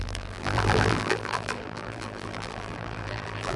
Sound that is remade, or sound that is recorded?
remade